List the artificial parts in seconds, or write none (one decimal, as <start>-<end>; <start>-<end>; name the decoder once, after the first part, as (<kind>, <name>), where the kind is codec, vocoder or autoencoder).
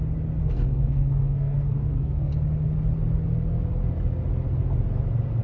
0.4-2.3 (codec, SNAC)